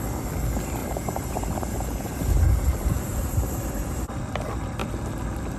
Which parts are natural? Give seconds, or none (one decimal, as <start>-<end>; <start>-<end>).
0.0-0.8; 4.2-5.6